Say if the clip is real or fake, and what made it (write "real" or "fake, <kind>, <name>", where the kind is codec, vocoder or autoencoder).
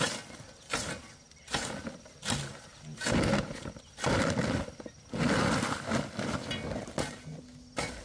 real